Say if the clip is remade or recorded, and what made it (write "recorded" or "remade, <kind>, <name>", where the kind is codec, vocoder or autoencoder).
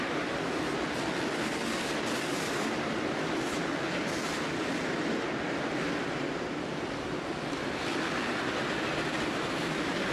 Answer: recorded